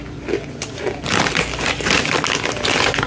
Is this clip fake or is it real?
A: real